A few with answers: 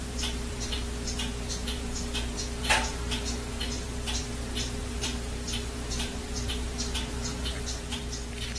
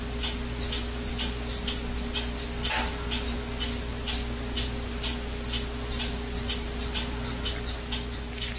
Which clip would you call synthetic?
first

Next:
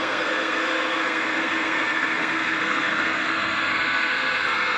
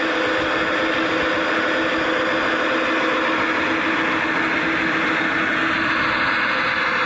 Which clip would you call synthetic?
first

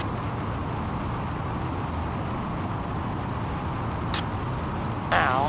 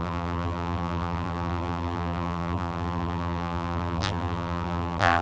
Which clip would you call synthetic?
second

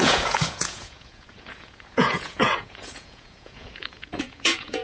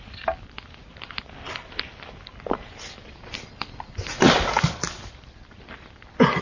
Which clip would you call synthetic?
first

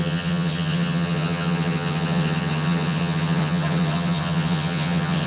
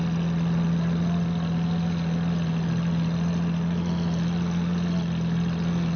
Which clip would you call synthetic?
first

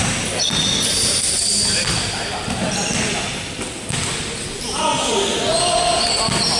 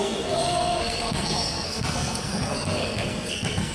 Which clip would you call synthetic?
second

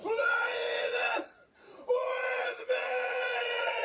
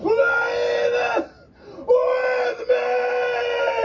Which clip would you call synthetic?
first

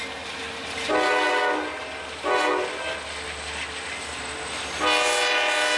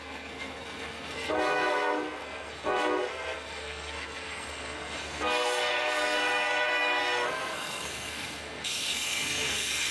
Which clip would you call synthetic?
second